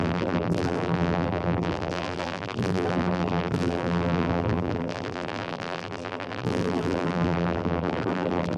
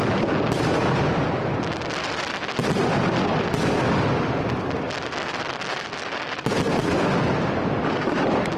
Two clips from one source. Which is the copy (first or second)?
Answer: first